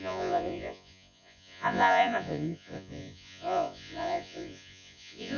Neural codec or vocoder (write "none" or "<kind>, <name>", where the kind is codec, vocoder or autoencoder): vocoder, Vocos